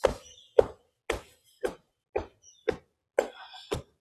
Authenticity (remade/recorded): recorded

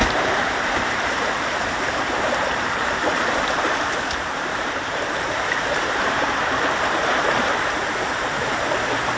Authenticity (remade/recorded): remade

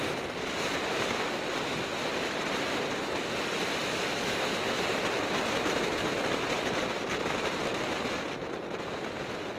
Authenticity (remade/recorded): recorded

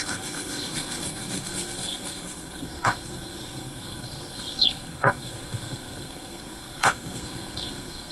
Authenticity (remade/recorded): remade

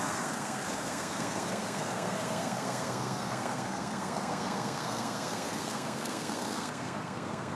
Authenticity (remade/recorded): remade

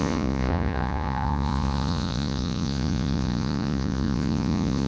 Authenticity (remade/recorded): remade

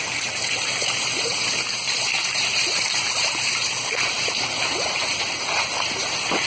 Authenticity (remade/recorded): remade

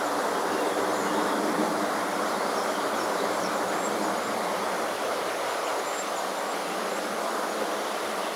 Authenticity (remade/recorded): recorded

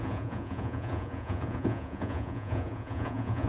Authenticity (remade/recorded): remade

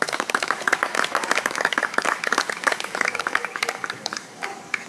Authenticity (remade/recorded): remade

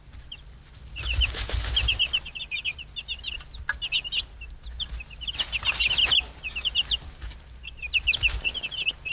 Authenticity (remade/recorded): recorded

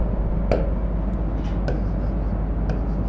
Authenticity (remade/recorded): recorded